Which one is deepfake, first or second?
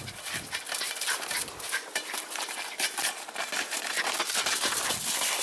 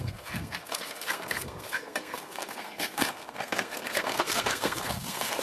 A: second